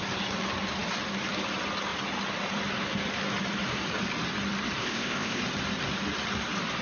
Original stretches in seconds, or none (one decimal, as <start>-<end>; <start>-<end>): 0.0-4.8; 5.4-6.8